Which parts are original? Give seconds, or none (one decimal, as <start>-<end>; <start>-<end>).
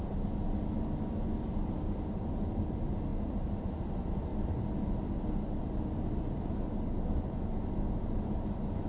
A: 0.0-8.9